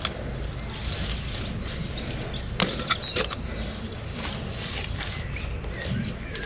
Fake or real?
real